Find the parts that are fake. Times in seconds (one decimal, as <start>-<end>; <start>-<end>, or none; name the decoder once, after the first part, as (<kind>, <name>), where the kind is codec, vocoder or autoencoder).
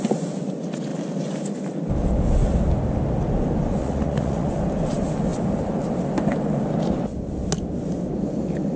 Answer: 3.8-4.5 (vocoder, Vocos)